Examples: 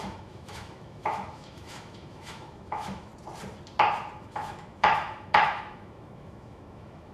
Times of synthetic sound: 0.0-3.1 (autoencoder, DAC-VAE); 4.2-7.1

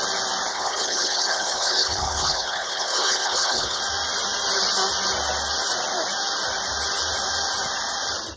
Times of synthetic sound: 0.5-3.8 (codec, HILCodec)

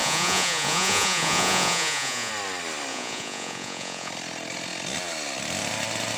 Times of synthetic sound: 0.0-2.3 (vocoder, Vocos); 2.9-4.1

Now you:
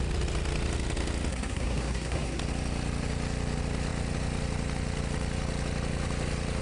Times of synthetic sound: 1.3-2.4 (codec, SNAC)

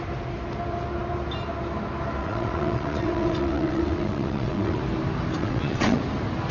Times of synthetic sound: 2.2-4.8 (vocoder, WaveNeXt); 5.4-6.0

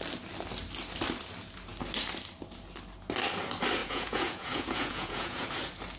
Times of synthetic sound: 3.8-5.5 (vocoder, Vocos)

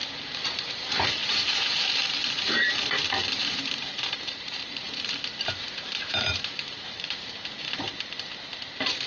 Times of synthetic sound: 0.0-2.8 (vocoder, BigVGAN v2); 3.2-7.9